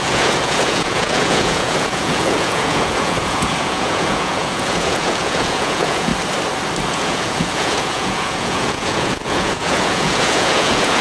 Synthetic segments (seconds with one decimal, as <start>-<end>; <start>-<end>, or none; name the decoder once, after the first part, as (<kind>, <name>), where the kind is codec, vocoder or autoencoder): 0.0-6.1 (vocoder, Vocos); 6.9-11.0

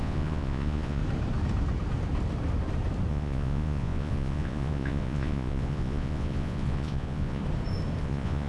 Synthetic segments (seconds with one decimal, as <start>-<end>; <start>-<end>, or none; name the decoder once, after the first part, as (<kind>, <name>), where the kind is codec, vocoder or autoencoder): 0.0-1.0 (vocoder, Vocos); 3.1-7.4; 8.0-8.5

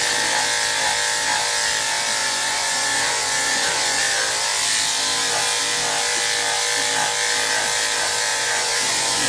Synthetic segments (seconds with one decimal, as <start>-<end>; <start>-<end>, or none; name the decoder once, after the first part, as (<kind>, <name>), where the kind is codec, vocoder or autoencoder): 2.2-4.0 (vocoder, Vocos); 8.3-9.3

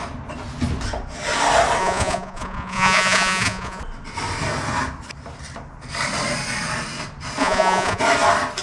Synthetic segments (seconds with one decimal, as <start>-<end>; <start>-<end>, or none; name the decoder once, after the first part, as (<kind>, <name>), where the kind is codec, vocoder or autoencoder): 1.8-3.8 (vocoder, Vocos); 7.4-8.0

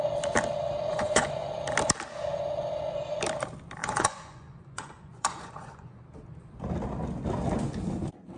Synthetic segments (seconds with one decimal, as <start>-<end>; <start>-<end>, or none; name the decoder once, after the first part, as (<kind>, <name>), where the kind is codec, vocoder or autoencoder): 0.9-1.5 (vocoder, Vocos); 3.8-6.0

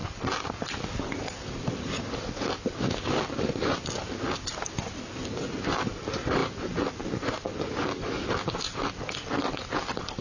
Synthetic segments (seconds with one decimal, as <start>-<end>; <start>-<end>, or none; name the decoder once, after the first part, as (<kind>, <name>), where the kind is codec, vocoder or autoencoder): none